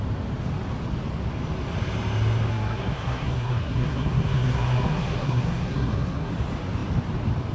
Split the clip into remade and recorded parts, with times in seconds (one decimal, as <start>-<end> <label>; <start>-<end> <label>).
0.0-2.5 recorded; 2.5-6.3 remade; 6.3-7.5 recorded

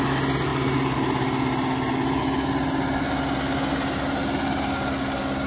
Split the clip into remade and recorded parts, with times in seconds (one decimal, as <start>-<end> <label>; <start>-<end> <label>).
0.0-5.5 recorded

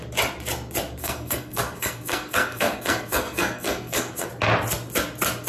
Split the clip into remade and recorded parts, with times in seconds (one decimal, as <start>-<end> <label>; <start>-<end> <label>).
0.0-1.0 recorded; 1.0-4.3 remade; 4.3-5.5 recorded

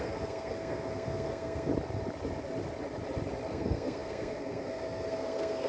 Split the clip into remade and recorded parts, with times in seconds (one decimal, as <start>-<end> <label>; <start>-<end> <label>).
0.0-1.7 remade; 1.7-3.5 recorded; 3.5-5.7 remade

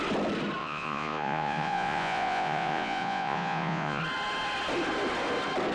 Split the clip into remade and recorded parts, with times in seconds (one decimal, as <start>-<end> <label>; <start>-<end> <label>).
0.0-0.6 recorded; 0.6-4.0 remade; 4.0-5.7 recorded

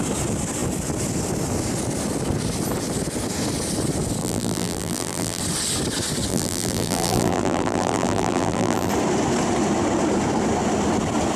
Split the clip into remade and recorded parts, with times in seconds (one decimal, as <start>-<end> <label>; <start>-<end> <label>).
0.0-4.2 recorded; 4.2-5.4 remade; 5.4-6.3 recorded; 6.3-8.9 remade; 8.9-11.4 recorded